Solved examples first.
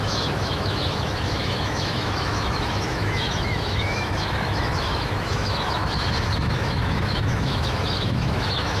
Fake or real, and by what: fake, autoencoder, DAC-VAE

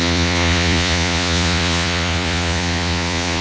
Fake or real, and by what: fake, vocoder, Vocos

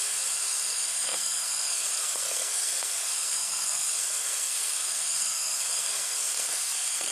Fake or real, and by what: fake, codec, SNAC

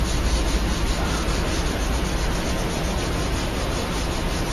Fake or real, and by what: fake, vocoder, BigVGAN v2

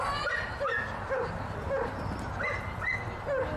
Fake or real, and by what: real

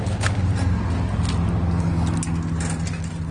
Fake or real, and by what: real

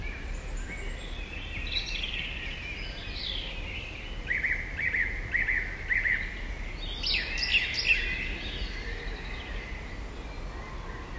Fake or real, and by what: real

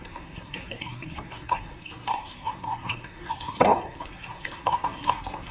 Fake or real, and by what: fake, codec, SNAC